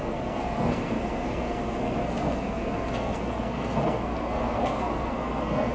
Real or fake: fake